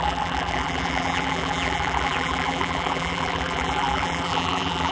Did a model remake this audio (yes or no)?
yes